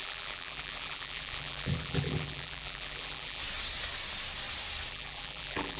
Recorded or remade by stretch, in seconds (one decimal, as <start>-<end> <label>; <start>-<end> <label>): 0.0-3.4 remade; 3.4-4.9 recorded; 4.9-5.8 remade